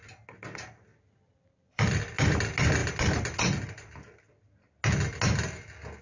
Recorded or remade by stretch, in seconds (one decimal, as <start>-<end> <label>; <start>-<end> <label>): 0.0-0.9 recorded; 0.9-2.0 remade; 2.0-6.0 recorded